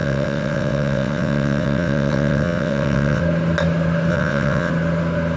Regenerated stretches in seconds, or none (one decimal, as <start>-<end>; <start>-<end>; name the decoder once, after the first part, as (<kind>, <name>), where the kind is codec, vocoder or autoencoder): 0.0-3.2 (vocoder, WaveNeXt); 4.1-4.7